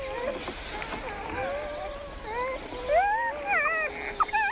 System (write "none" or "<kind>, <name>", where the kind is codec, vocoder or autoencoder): none